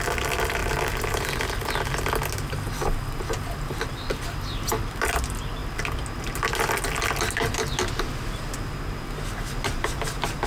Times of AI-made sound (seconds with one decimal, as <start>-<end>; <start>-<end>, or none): 0.6-1.4